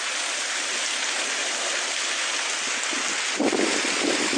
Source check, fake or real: real